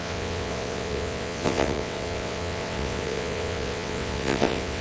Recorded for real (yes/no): no